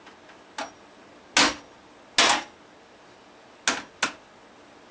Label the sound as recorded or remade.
recorded